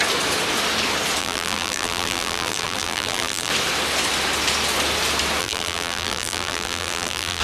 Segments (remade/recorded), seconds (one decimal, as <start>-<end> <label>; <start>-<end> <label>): 0.0-1.2 recorded; 1.2-3.5 remade; 3.5-5.4 recorded; 5.4-7.4 remade